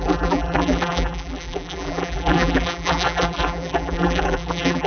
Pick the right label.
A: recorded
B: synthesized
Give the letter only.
B